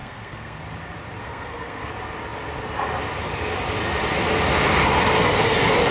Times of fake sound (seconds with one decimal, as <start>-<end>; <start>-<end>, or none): 0.0-0.6; 1.2-1.9